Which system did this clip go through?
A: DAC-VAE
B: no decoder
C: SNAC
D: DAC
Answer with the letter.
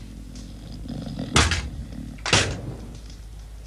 B